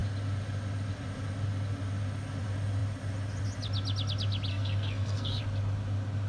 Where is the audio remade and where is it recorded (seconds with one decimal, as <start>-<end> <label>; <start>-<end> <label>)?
0.0-4.5 recorded; 4.5-5.4 remade; 5.4-6.3 recorded